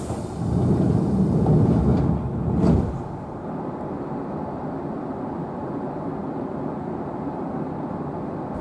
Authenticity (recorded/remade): recorded